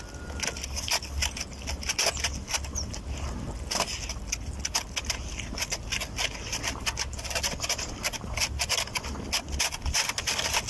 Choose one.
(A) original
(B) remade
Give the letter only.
A